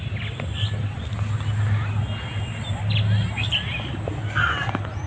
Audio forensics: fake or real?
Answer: real